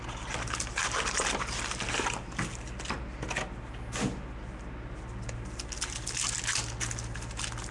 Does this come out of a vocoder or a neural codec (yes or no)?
no